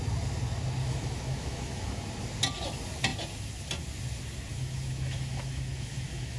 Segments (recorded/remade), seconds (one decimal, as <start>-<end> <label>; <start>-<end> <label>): 0.0-0.8 recorded; 0.8-2.1 remade; 2.1-4.5 recorded; 4.5-6.4 remade